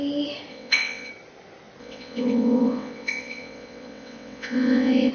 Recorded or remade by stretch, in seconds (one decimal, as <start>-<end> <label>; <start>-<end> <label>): 0.0-0.5 recorded; 0.5-1.1 remade; 1.1-1.8 recorded; 1.8-5.1 remade